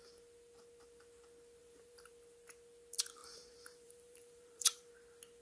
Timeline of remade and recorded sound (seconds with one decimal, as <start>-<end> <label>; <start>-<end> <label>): 0.0-1.6 recorded; 1.6-2.1 remade; 2.1-3.2 recorded; 3.2-4.9 remade; 4.9-5.4 recorded